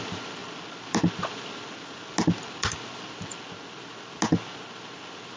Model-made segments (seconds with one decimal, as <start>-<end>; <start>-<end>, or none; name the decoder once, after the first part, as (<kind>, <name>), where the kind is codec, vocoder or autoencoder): none